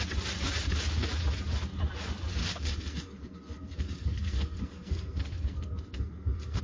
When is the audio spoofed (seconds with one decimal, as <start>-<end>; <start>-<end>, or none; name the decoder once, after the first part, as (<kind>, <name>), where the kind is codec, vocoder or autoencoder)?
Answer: 2.4-6.6 (codec, SNAC)